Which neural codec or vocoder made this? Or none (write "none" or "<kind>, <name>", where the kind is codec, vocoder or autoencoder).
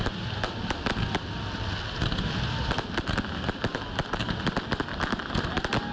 none